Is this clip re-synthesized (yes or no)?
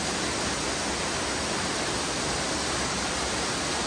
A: no